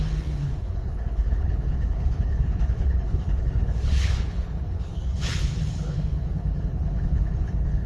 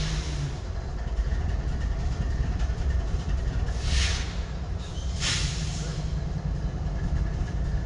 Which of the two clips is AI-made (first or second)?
first